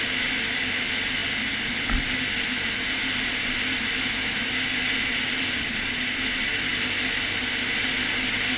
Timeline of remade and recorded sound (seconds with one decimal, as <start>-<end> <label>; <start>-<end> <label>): 0.0-8.6 recorded